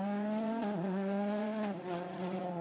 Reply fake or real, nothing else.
fake